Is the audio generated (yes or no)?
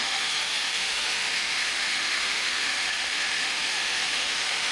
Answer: yes